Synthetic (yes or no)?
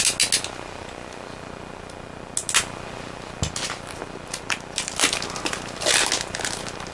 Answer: no